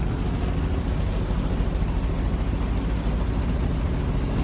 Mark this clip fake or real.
real